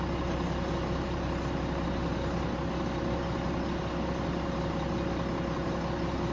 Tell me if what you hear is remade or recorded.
recorded